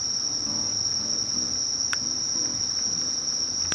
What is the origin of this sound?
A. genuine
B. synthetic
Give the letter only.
A